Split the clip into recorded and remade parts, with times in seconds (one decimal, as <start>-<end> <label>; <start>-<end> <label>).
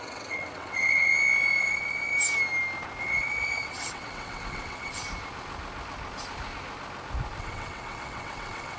0.0-1.1 remade; 1.1-1.6 recorded; 1.6-2.1 remade; 2.1-3.0 recorded; 3.0-5.0 remade; 5.0-7.4 recorded; 7.4-8.8 remade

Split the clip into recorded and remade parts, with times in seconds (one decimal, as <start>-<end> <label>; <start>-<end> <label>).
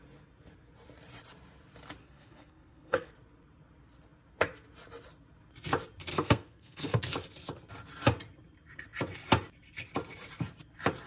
0.0-2.0 recorded; 2.0-3.1 remade; 3.1-6.1 recorded; 6.1-7.0 remade; 7.0-11.1 recorded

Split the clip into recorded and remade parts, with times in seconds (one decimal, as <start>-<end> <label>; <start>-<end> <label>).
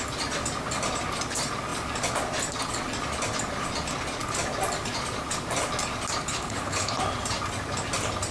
0.0-6.3 recorded; 6.3-7.0 remade; 7.0-8.3 recorded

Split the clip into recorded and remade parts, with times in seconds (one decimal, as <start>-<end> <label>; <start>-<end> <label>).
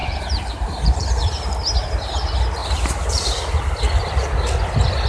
0.0-1.1 remade; 1.1-2.6 recorded; 2.6-3.2 remade; 3.2-5.1 recorded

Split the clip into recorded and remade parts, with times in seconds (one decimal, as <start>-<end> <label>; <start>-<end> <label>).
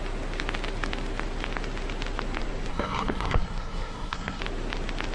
0.0-2.7 recorded; 2.7-4.4 remade; 4.4-5.1 recorded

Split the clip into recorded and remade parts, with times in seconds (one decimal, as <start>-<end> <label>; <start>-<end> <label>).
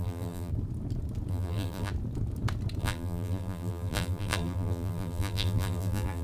0.0-0.5 remade; 0.5-1.3 recorded; 1.3-1.9 remade; 1.9-2.8 recorded; 2.8-6.2 remade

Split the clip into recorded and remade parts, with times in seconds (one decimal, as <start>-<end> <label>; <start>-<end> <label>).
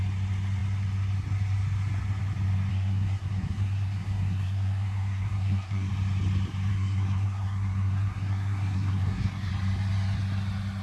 0.0-2.7 recorded; 2.7-5.9 remade; 5.9-6.7 recorded; 6.7-9.5 remade; 9.5-10.8 recorded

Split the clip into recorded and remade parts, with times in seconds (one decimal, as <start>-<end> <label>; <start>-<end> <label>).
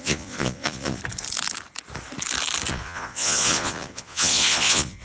0.0-1.0 remade; 1.0-2.7 recorded; 2.7-5.0 remade